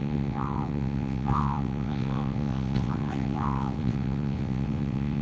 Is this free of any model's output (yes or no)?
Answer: no